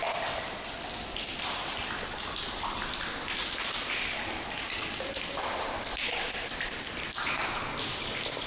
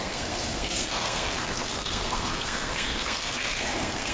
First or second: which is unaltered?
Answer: first